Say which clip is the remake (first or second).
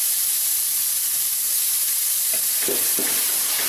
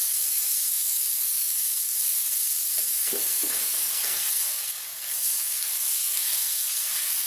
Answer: second